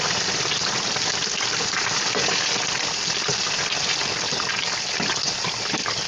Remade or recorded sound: recorded